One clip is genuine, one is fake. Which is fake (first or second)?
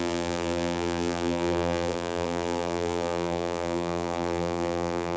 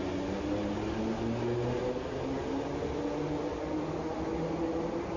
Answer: first